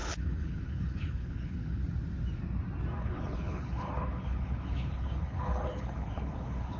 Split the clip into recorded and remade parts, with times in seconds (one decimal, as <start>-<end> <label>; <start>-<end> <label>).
0.0-1.8 remade; 1.8-3.0 recorded; 3.0-6.8 remade